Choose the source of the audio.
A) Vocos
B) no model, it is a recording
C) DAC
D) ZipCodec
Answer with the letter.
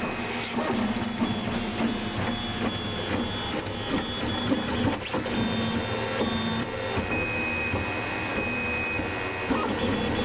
B